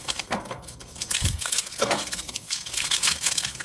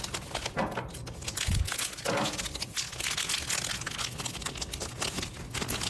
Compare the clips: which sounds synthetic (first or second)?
first